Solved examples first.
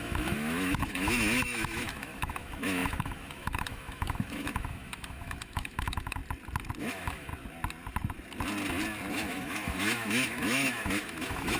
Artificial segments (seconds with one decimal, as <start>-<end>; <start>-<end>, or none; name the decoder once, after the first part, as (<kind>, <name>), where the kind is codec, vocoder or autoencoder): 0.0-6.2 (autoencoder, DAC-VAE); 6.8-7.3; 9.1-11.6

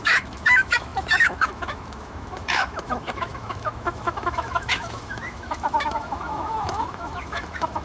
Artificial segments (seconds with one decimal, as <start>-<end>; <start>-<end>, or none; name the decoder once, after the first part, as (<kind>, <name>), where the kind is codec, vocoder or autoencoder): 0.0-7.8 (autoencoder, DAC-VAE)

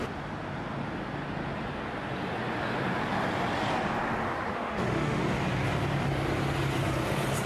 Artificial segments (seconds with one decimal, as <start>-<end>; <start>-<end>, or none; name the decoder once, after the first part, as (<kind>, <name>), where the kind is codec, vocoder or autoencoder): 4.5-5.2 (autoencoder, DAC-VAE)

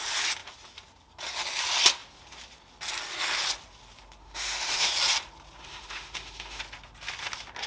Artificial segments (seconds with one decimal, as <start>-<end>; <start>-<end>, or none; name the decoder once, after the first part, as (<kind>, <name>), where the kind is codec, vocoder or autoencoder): 4.2-4.9 (autoencoder, DAC-VAE); 5.6-6.6